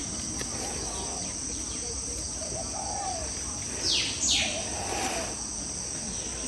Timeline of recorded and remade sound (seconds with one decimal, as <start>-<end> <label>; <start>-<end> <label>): 0.0-6.5 recorded